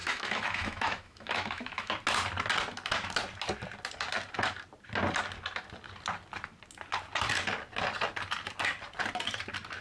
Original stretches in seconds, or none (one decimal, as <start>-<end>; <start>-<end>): 1.9-9.8